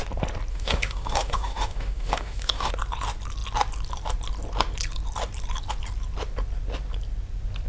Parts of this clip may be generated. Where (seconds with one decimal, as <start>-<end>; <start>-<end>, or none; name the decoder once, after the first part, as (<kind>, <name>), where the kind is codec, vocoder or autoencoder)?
0.5-2.7 (autoencoder, DAC-VAE)